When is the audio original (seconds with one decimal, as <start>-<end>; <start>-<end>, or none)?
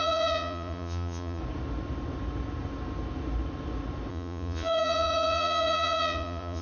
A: 1.4-4.1